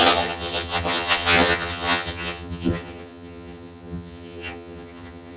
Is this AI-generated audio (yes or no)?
yes